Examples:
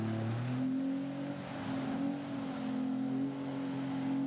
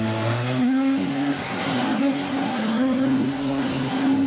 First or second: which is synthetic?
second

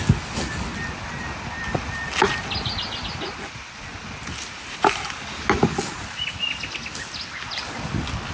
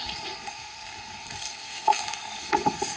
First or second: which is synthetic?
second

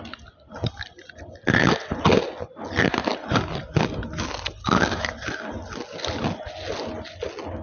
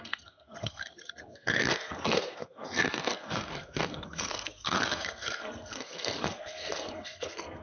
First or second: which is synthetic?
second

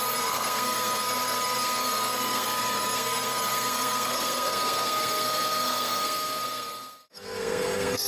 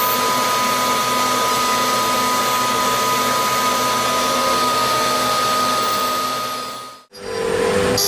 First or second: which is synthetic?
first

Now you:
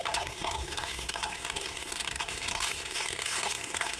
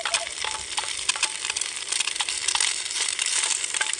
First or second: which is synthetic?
first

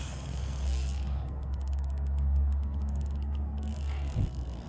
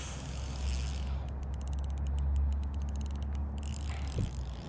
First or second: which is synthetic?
first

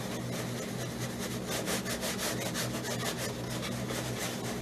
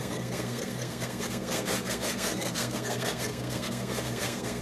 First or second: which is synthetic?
second